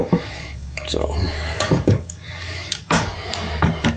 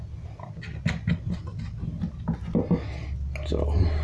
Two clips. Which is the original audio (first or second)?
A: second